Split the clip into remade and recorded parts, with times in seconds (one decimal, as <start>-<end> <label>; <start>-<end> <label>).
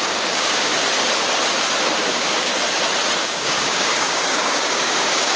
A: 0.0-0.7 remade; 0.7-2.1 recorded; 2.1-2.5 remade; 2.5-3.2 recorded; 3.2-5.4 remade